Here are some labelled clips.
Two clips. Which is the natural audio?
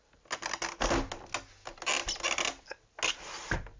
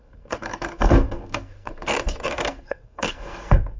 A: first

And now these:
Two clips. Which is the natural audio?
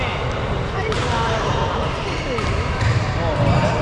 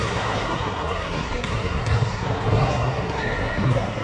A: first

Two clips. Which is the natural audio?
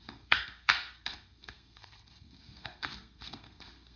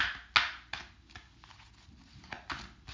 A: second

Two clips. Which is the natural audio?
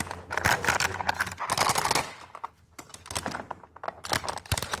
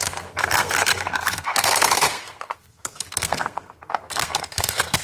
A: first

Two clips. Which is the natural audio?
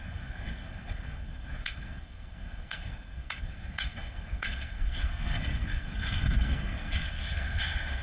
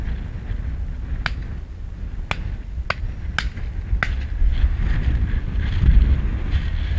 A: second